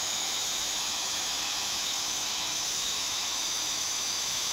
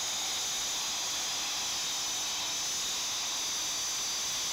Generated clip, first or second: first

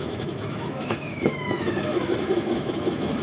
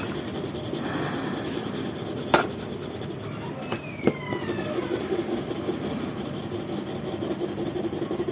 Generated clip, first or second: first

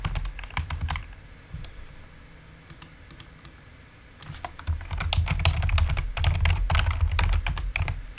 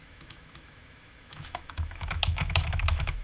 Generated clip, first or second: second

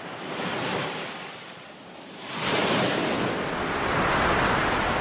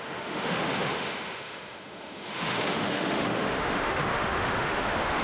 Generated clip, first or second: second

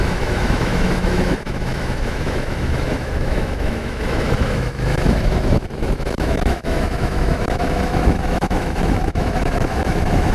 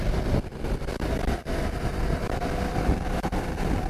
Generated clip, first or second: first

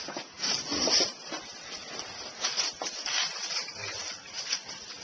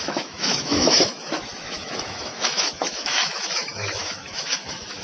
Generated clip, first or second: second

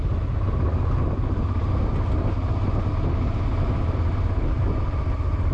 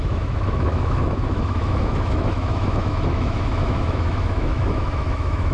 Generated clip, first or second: second